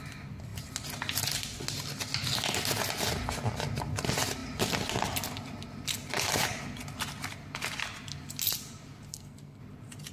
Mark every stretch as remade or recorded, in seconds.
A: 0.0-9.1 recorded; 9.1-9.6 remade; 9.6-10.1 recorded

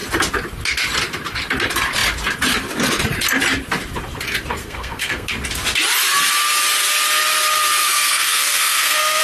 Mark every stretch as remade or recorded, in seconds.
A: 0.0-4.6 recorded; 4.6-5.3 remade; 5.3-7.8 recorded; 7.8-9.2 remade

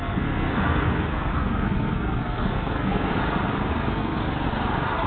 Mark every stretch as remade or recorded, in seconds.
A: 0.0-3.1 remade; 3.1-3.7 recorded; 3.7-4.2 remade; 4.2-5.1 recorded

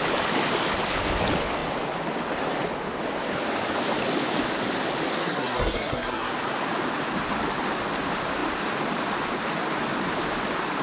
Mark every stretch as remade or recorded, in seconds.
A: 0.0-5.2 recorded; 5.2-6.3 remade; 6.3-10.8 recorded

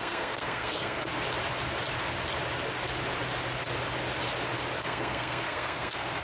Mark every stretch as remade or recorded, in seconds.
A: 0.0-1.1 remade; 1.1-4.8 recorded; 4.8-6.2 remade

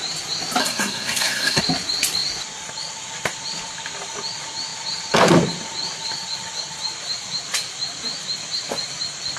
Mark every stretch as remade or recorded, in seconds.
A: 0.0-0.6 recorded; 0.6-1.6 remade; 1.6-9.4 recorded

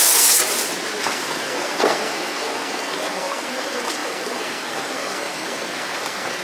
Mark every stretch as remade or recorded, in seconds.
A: 0.0-0.4 remade; 0.4-1.0 recorded; 1.0-6.4 remade